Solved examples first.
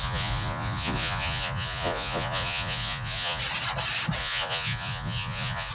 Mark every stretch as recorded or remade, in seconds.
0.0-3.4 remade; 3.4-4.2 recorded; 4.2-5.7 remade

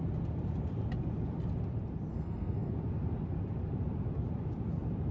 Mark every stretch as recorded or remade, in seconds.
0.0-2.1 recorded; 2.1-2.7 remade; 2.7-5.1 recorded

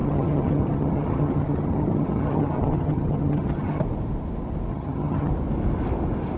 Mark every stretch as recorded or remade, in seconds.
0.0-3.8 remade; 3.8-4.7 recorded; 4.7-5.3 remade; 5.3-6.4 recorded

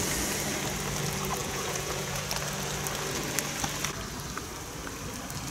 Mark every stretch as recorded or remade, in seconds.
0.0-1.4 recorded; 1.4-2.2 remade; 2.2-5.5 recorded

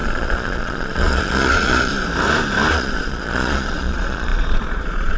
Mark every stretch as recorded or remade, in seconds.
0.0-1.9 remade; 1.9-2.7 recorded; 2.7-5.2 remade

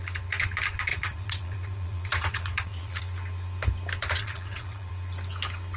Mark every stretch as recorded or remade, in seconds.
0.0-0.9 recorded; 0.9-3.0 remade; 3.0-4.0 recorded; 4.0-4.9 remade; 4.9-5.8 recorded

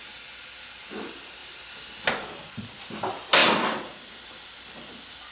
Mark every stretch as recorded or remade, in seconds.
0.0-5.3 recorded